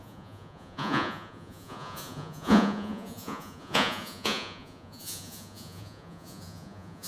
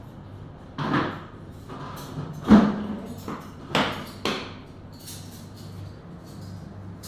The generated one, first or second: first